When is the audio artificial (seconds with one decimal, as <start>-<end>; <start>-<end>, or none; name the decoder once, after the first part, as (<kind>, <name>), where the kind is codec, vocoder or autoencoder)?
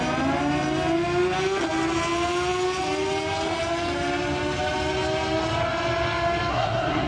6.5-7.1 (codec, SNAC)